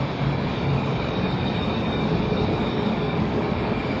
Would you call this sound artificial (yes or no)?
yes